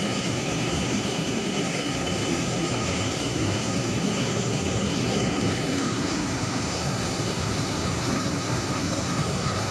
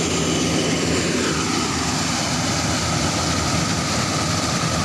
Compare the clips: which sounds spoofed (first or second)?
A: first